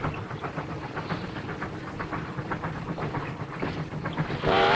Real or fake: fake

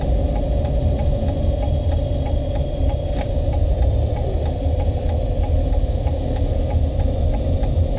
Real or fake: real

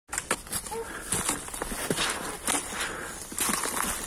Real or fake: real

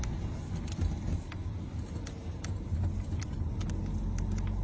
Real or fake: real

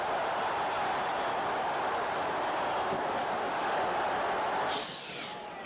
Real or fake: real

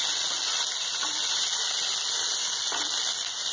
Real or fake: real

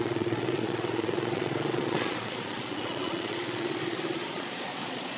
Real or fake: fake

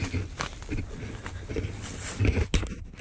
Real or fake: real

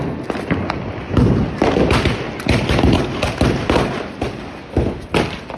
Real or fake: real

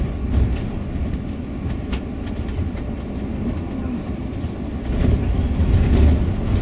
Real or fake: real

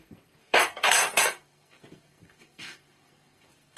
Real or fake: fake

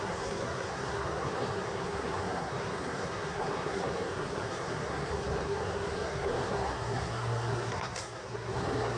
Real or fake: fake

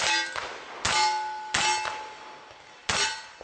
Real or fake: real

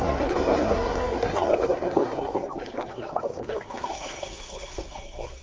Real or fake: fake